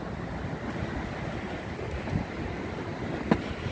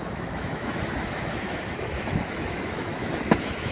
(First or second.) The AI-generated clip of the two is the second